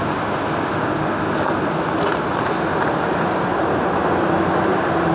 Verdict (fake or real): real